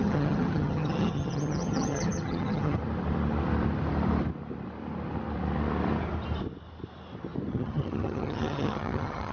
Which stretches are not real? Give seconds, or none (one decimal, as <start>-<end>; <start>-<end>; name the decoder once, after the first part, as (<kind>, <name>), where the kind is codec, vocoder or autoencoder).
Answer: 0.0-2.8 (vocoder, HiFi-GAN); 7.5-9.3